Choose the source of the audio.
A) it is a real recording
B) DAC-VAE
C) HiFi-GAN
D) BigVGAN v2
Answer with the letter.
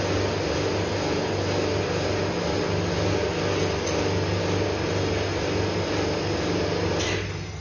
A